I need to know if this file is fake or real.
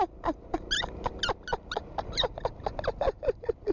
real